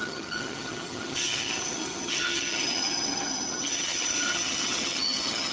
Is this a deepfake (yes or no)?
yes